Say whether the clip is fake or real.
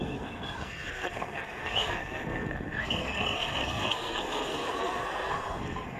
fake